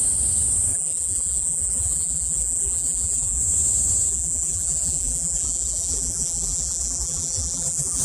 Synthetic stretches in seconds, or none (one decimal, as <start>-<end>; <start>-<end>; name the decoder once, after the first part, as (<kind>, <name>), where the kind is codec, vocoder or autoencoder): 0.7-3.4 (vocoder, BigVGAN v2); 4.1-8.0